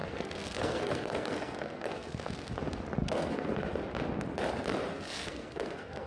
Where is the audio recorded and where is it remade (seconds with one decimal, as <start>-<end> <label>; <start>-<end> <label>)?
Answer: 0.0-2.3 remade; 2.3-3.0 recorded; 3.0-3.7 remade; 3.7-4.9 recorded; 4.9-6.1 remade